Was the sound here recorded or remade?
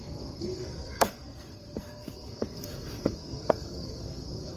remade